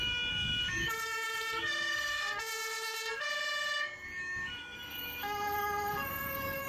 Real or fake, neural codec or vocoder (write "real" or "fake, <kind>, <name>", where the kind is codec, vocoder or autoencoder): fake, codec, DAC